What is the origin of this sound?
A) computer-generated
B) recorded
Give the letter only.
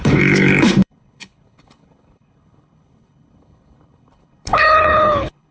A